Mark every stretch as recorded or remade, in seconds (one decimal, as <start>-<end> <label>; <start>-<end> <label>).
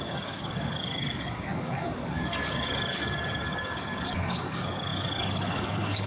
0.0-6.1 remade